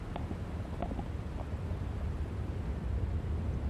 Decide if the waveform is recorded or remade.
recorded